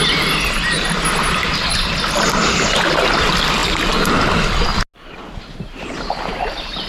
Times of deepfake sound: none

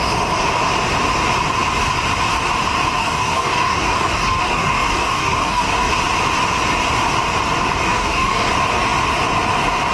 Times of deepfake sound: 3.0-5.9 (codec, DAC); 7.9-8.5